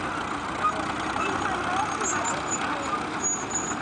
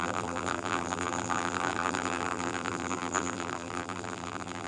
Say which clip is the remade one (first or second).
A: second